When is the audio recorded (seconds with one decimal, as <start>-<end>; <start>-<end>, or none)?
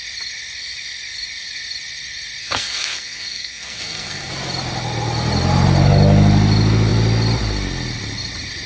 0.0-2.4; 4.3-8.7